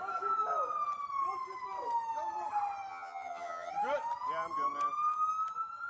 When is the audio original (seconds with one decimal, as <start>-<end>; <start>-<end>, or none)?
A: 0.0-2.9; 3.7-5.9